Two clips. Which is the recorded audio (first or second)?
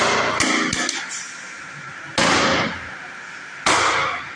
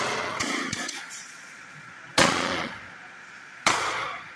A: first